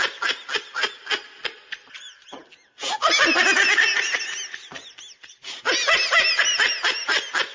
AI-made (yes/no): no